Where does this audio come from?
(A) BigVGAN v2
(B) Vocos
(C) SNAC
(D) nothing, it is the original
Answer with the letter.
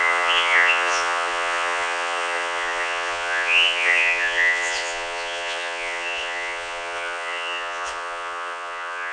B